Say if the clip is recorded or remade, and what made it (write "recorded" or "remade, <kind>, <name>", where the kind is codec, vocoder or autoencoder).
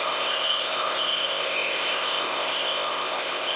remade, codec, ZipCodec